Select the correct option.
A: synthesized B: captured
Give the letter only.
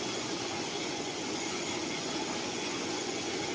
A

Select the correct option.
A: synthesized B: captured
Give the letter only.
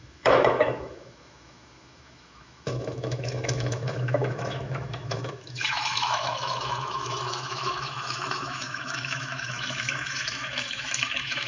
A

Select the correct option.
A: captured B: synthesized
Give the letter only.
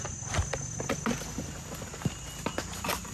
A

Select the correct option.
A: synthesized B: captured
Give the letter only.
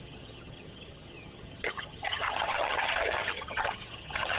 A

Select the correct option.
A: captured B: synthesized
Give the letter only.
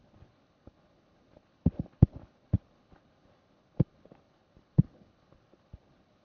B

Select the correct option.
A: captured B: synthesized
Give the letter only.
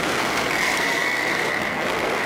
B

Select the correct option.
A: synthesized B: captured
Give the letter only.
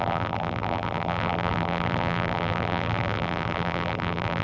A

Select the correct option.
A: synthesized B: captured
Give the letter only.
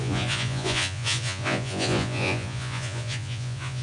A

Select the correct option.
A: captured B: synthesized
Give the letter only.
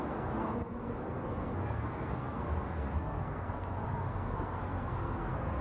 B